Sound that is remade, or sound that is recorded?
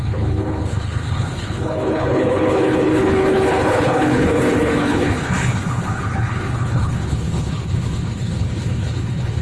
remade